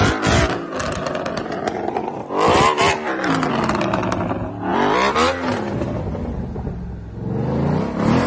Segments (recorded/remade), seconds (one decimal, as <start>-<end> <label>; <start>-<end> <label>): 0.0-8.3 recorded